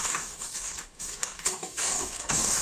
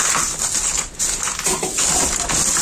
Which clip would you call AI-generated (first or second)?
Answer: first